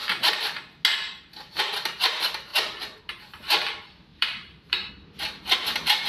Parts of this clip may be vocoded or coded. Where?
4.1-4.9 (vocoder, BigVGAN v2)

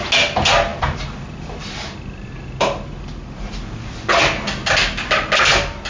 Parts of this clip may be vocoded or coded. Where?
none

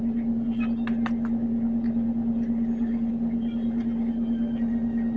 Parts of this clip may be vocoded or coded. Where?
none

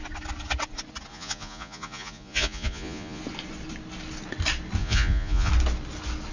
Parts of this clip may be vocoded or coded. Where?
1.1-3.2 (vocoder, Vocos); 4.8-5.5

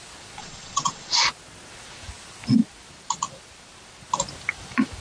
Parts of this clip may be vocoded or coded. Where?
0.4-1.2 (vocoder, WaveNeXt)

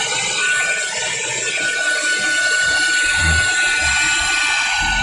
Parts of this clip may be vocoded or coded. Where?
none

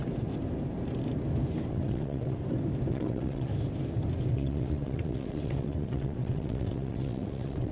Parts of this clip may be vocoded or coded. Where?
1.7-2.4 (vocoder, WaveNeXt); 2.9-3.5; 4.3-7.7